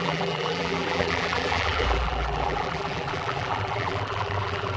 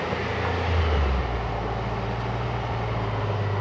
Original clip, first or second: second